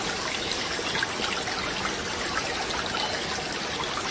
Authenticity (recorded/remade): recorded